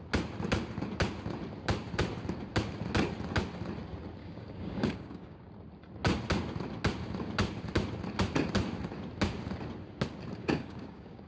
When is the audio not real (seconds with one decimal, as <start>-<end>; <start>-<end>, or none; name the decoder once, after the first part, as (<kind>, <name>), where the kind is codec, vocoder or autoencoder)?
4.2-5.5 (codec, DAC); 10.4-11.3